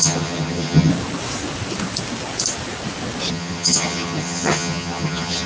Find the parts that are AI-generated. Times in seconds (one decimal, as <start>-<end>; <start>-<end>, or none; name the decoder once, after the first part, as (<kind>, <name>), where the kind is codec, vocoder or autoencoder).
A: 0.0-0.9 (vocoder, HiFi-GAN); 3.3-5.5